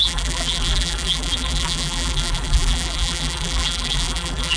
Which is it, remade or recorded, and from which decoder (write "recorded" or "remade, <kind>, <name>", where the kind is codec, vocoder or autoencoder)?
remade, vocoder, BigVGAN v2